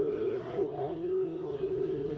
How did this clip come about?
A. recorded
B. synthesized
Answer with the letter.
B